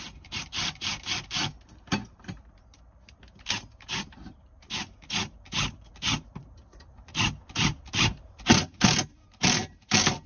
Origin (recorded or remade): remade